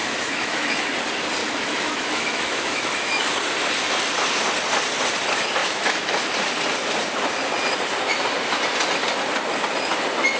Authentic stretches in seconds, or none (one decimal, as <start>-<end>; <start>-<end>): 0.8-1.4; 3.3-5.6; 6.2-10.4

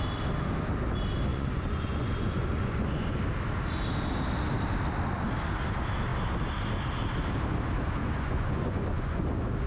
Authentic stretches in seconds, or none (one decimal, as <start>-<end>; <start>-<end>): 0.0-1.3; 3.2-8.0; 9.2-9.7